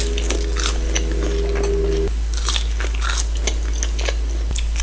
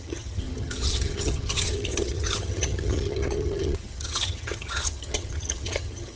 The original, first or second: first